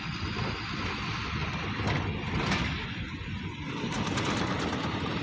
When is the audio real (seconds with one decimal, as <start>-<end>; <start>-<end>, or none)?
0.0-5.2